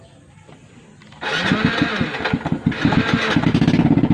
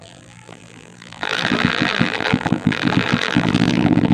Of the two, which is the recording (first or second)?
first